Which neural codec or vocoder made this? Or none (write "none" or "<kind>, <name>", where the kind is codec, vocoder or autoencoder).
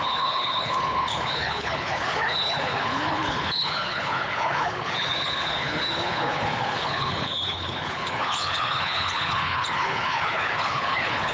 codec, HILCodec